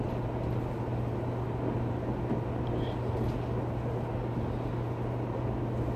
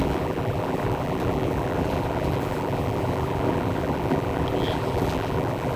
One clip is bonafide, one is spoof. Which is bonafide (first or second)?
first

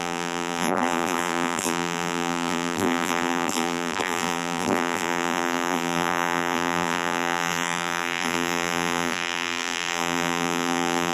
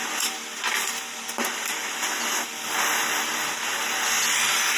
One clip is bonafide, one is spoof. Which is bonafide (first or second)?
second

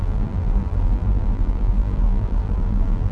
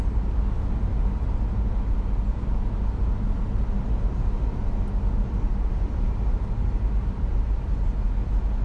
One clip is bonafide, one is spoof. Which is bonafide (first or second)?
second